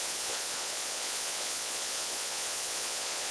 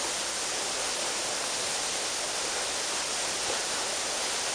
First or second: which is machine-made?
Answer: first